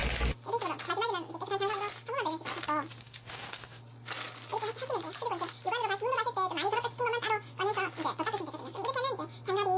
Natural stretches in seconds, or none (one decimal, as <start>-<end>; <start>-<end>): 0.0-3.0; 3.8-9.8